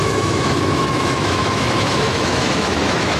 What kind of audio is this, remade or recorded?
remade